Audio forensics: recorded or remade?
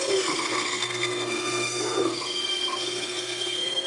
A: remade